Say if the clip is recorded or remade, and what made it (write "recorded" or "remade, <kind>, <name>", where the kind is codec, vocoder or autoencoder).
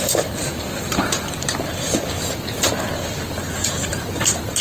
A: recorded